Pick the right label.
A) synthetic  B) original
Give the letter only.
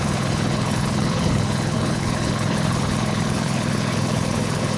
A